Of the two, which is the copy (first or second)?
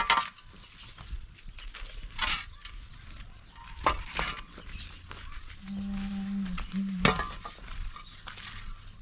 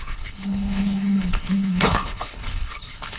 second